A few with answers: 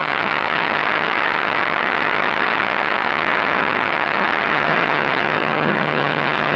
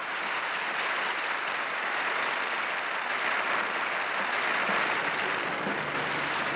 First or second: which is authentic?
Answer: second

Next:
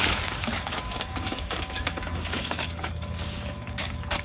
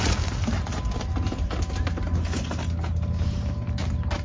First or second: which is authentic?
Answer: second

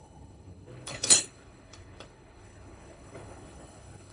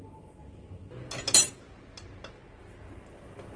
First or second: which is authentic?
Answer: second